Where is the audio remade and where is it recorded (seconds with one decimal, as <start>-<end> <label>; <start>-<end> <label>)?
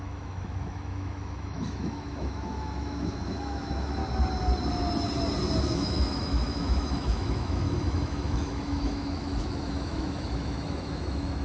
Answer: 0.0-4.0 remade; 4.0-5.6 recorded; 5.6-11.4 remade